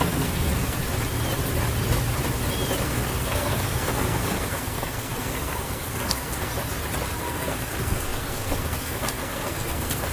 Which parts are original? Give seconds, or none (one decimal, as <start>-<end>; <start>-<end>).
0.8-2.8; 6.5-7.2